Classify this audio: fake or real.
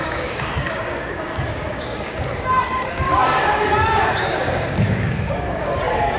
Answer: fake